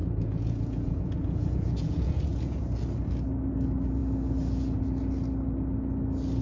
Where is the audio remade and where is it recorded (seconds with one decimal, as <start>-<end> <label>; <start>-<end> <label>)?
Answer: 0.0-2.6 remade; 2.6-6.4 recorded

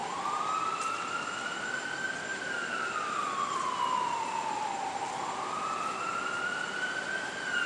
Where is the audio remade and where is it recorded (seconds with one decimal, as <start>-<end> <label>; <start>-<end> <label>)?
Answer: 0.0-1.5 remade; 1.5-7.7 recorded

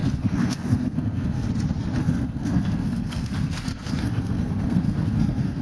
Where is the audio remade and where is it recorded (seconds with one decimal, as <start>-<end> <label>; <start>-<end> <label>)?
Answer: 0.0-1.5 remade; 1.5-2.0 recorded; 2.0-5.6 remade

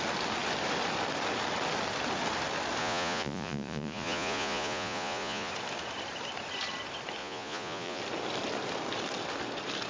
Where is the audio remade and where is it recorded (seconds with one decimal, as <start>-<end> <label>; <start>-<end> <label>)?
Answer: 0.0-2.8 recorded; 2.8-5.5 remade; 5.5-7.2 recorded; 7.2-8.0 remade; 8.0-9.9 recorded

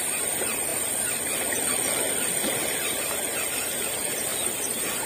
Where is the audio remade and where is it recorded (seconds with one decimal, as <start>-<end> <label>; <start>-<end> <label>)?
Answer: 0.0-5.1 recorded

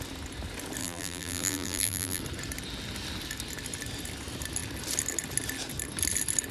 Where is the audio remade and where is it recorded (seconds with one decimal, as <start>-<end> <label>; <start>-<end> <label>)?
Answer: 0.0-0.8 recorded; 0.8-2.2 remade; 2.2-6.5 recorded

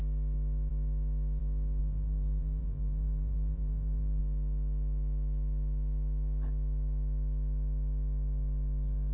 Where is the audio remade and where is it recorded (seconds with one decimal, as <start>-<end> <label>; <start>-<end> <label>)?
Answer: 0.0-1.8 recorded; 1.8-4.2 remade; 4.2-9.1 recorded